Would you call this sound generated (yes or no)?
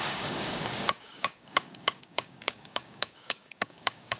yes